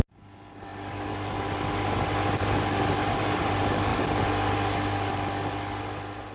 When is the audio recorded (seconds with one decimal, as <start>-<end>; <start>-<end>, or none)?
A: 0.0-6.3